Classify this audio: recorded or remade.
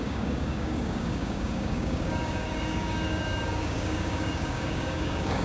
remade